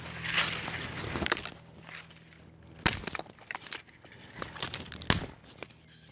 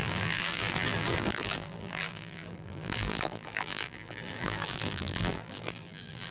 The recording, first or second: first